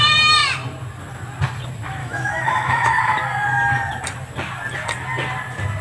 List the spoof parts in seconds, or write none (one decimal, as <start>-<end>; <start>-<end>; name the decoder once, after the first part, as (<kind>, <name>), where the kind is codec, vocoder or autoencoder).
2.0-3.0 (autoencoder, DAC-VAE)